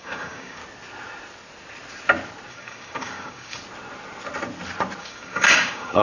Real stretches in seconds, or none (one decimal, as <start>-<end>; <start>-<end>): 0.6-2.5; 3.6-5.0